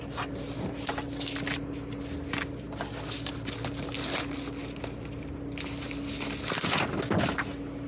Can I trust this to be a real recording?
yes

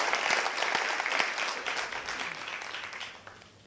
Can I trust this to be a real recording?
yes